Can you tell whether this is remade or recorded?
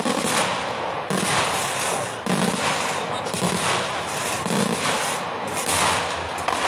recorded